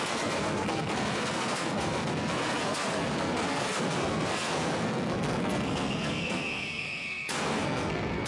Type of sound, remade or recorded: remade